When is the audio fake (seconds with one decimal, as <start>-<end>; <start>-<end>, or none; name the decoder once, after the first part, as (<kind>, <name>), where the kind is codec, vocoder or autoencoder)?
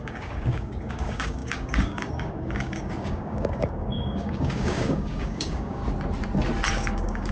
0.0-5.8 (codec, DAC); 6.7-7.3